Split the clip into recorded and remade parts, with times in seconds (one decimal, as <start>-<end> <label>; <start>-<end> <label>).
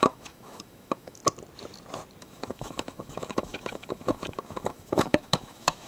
0.0-1.2 remade; 1.2-2.2 recorded; 2.2-5.9 remade